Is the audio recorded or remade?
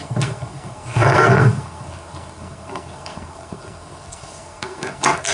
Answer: remade